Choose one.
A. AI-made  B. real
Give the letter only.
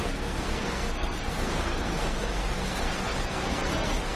A